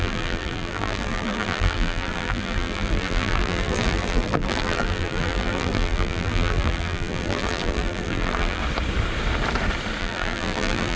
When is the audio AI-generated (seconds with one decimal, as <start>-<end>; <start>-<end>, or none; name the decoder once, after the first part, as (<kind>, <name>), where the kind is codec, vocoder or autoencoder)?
0.0-8.6 (vocoder, BigVGAN v2); 10.0-11.0